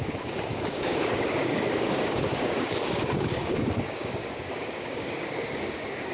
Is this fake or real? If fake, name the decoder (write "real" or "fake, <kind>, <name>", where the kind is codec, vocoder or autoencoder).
fake, codec, DAC